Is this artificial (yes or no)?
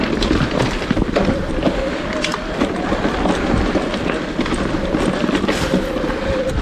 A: no